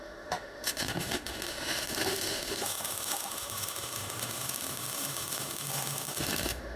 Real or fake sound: fake